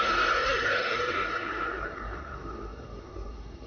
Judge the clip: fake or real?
fake